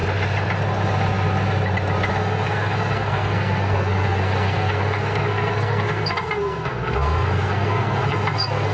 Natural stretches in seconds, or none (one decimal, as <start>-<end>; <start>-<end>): 0.0-2.1